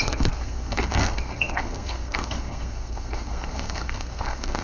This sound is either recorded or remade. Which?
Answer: remade